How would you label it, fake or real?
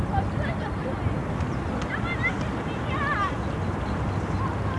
real